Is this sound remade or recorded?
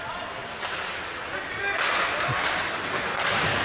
recorded